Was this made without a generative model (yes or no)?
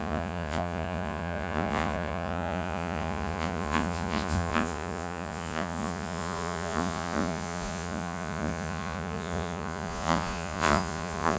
no